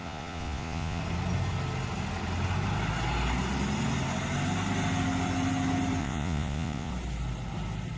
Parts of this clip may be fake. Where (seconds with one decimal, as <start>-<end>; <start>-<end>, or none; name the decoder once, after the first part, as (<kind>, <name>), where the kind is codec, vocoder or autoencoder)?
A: 0.0-1.0 (vocoder, Vocos); 6.0-6.9